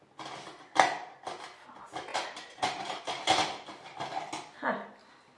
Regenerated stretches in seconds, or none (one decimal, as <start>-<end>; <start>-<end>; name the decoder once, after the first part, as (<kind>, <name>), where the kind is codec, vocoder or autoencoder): 2.1-3.0 (vocoder, BigVGAN v2)